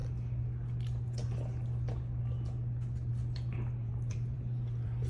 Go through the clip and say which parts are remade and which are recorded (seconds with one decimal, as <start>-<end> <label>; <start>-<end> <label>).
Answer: 0.0-3.8 recorded; 3.8-5.1 remade